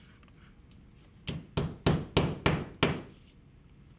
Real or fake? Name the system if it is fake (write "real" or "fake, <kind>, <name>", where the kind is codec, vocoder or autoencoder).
real